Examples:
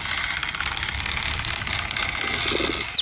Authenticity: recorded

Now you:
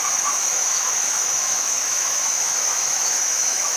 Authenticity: remade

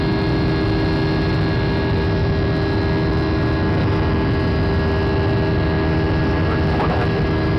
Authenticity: recorded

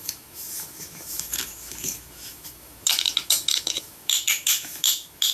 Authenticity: remade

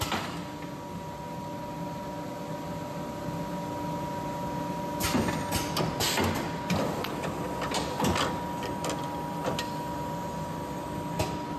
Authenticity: recorded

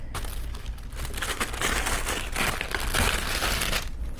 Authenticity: recorded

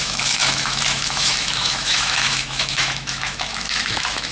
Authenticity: remade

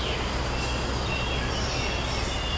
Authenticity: recorded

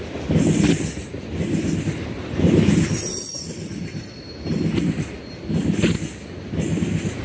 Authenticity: recorded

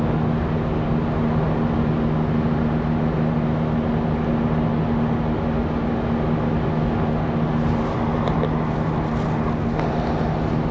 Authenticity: recorded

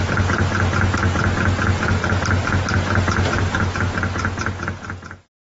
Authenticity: recorded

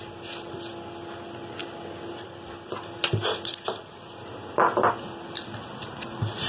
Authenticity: recorded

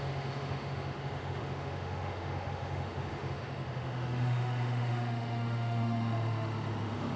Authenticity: remade